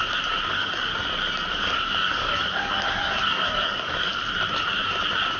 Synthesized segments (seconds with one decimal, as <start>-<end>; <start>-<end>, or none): 0.5-0.9; 1.5-4.2